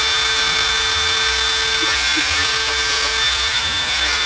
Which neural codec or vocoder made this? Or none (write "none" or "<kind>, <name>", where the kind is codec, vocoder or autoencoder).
none